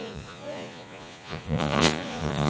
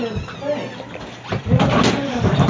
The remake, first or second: first